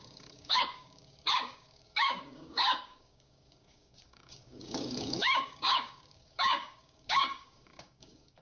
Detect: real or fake fake